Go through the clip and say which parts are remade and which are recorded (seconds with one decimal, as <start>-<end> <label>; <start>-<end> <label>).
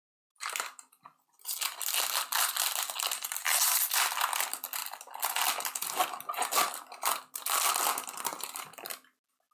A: 0.0-9.5 recorded